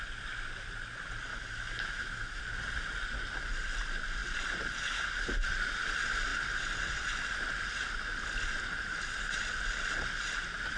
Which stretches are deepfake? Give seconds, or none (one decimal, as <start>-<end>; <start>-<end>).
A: 1.3-2.4